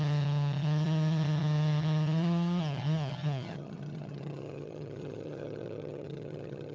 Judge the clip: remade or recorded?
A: remade